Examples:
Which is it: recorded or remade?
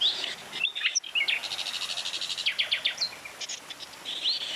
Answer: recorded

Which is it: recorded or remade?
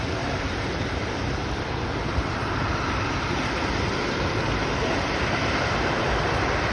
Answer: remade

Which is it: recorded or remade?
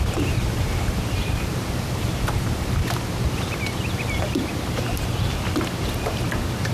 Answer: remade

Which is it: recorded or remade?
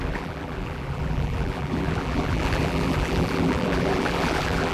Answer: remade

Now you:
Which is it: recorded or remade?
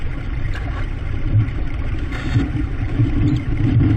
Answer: remade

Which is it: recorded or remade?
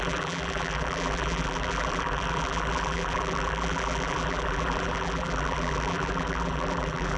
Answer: remade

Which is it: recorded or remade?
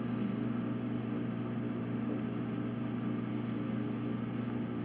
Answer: recorded